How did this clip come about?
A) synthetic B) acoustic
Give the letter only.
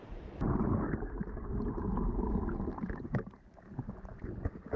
A